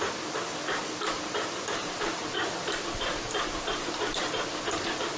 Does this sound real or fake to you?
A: real